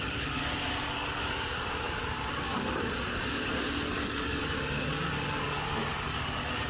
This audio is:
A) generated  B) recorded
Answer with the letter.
A